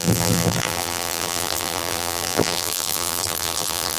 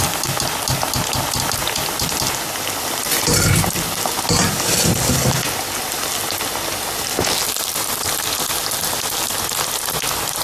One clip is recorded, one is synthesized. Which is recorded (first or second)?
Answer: second